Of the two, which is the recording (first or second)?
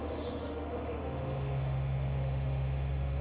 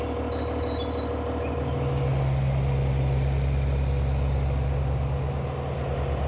second